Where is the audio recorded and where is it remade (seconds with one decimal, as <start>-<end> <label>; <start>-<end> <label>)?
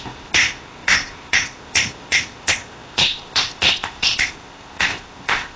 0.0-5.6 remade